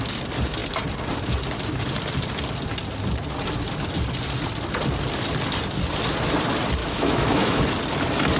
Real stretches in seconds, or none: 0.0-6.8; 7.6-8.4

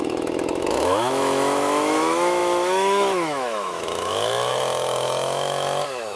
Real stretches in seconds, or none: none

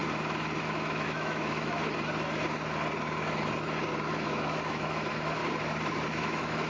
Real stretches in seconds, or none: 0.0-0.6; 1.8-4.3; 5.4-6.1

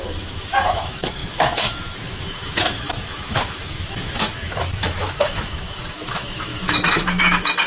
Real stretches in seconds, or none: none

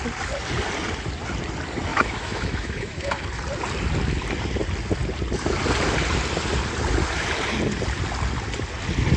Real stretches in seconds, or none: 0.0-1.9; 3.2-9.2

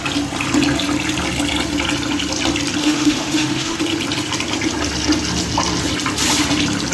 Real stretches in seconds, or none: 0.0-2.8; 3.8-6.9

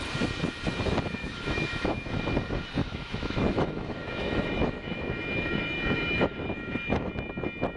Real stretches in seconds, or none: 0.0-1.2; 2.2-2.8; 7.1-7.8